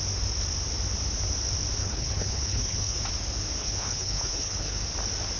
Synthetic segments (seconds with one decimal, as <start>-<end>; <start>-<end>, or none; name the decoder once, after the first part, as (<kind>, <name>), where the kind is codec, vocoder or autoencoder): 1.8-3.0 (codec, HILCodec); 3.6-4.8